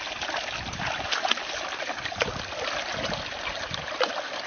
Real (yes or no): yes